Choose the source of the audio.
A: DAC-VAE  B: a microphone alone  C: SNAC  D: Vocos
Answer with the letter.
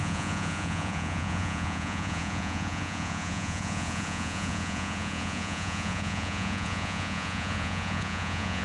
D